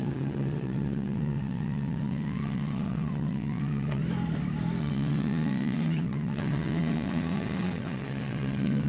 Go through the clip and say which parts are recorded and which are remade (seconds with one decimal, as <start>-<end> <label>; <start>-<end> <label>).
0.0-4.0 remade; 4.0-4.8 recorded; 4.8-8.9 remade